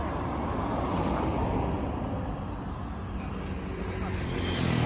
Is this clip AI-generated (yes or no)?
no